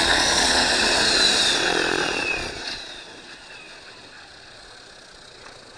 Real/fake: fake